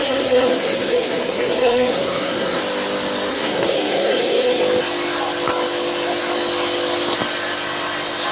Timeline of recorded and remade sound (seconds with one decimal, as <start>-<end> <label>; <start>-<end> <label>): 0.0-2.6 remade; 2.6-3.3 recorded; 3.3-4.6 remade; 4.6-8.3 recorded